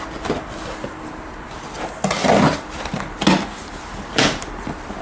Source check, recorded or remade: recorded